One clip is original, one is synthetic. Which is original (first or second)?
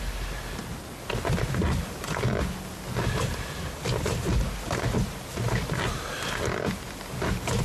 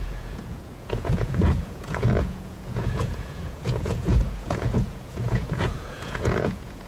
first